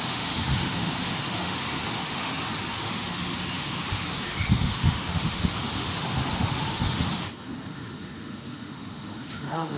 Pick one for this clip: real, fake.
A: fake